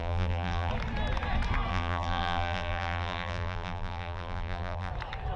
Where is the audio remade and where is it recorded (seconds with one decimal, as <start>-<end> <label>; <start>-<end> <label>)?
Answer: 0.0-0.7 remade; 0.7-1.7 recorded; 1.7-4.9 remade; 4.9-5.4 recorded